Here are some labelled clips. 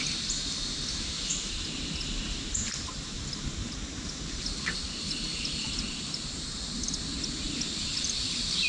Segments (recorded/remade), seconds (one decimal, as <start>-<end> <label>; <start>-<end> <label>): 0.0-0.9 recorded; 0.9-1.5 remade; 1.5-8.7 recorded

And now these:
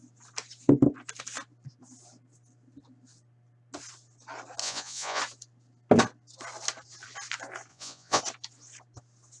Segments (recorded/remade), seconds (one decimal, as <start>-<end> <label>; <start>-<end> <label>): 0.0-4.6 recorded; 4.6-5.2 remade; 5.2-7.7 recorded; 7.7-8.2 remade; 8.2-9.4 recorded

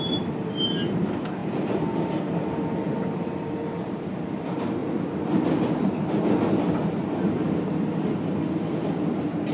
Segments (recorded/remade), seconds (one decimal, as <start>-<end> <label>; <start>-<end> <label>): 0.0-9.5 recorded